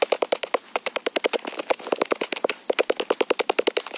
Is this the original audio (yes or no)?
yes